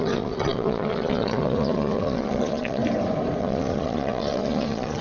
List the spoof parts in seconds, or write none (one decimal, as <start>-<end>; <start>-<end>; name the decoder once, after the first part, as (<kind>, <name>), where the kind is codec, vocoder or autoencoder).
0.0-2.8 (vocoder, Vocos); 3.4-5.0